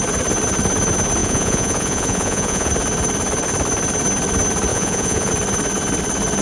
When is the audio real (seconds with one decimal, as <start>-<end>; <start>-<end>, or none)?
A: 0.0-1.2; 2.7-4.7; 5.3-6.4